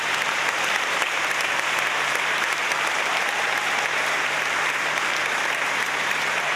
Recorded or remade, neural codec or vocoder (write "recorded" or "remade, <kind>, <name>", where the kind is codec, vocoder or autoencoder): remade, vocoder, BigVGAN v2